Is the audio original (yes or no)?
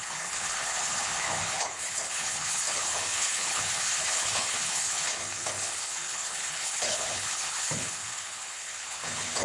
no